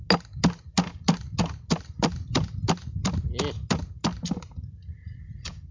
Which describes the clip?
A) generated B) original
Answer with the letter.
B